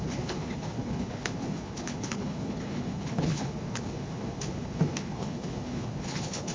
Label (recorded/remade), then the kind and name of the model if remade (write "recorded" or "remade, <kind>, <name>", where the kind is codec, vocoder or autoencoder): remade, codec, HILCodec